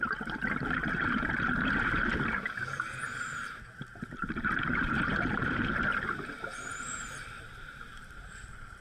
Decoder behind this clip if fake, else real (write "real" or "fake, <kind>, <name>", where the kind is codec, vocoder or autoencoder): fake, vocoder, BigVGAN v2